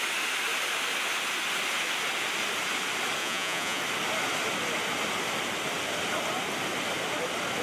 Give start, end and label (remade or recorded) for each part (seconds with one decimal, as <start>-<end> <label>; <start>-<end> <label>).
0.0-3.2 recorded; 3.2-3.8 remade; 3.8-7.6 recorded